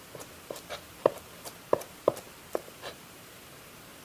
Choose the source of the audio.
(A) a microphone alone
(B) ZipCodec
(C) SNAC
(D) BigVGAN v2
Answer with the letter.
D